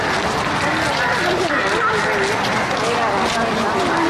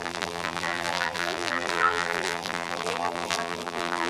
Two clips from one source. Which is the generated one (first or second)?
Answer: second